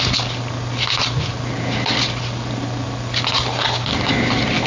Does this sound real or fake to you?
real